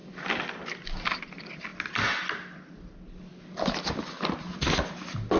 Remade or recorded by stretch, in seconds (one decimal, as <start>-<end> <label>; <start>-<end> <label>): 0.0-0.5 remade; 0.5-5.4 recorded